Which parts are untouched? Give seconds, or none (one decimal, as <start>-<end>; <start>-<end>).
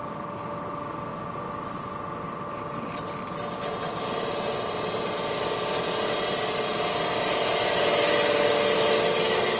0.0-9.6